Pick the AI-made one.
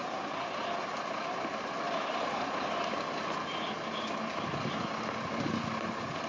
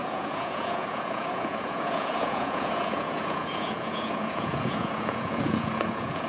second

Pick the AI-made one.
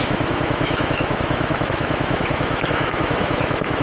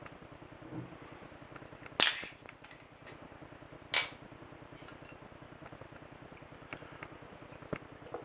first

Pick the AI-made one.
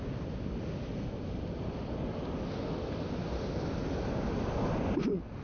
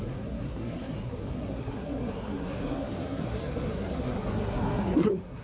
second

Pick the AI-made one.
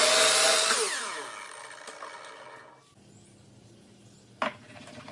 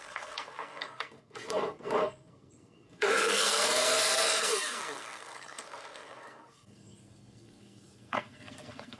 second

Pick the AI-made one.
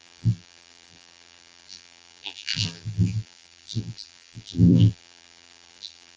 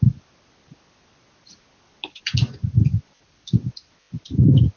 first